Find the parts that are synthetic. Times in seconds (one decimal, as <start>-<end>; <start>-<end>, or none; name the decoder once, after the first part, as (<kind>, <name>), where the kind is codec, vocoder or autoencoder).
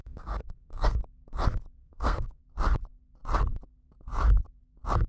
0.0-1.0 (codec, SNAC); 1.8-2.4